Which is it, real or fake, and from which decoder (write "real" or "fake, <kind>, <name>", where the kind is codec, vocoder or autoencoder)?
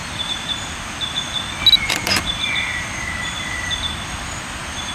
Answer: real